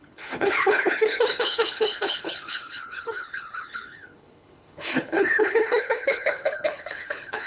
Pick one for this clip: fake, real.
fake